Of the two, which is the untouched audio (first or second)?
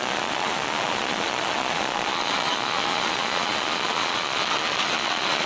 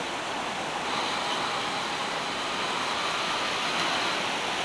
second